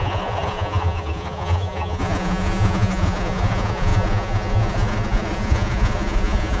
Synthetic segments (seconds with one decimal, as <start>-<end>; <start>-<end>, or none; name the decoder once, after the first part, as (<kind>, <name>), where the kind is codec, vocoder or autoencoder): 0.0-6.6 (vocoder, Vocos)